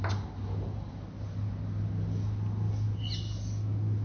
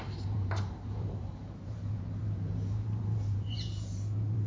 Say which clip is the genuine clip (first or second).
first